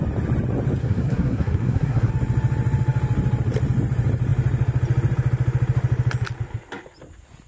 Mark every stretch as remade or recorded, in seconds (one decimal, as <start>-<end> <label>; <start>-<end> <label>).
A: 0.0-0.8 recorded; 0.8-2.1 remade; 2.1-7.5 recorded